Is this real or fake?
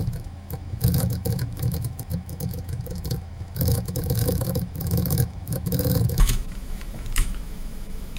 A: fake